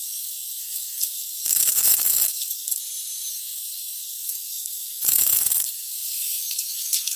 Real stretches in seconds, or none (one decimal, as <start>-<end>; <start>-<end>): 2.8-3.3